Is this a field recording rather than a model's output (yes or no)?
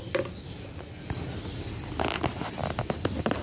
yes